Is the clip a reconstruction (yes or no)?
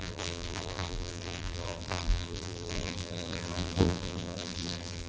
yes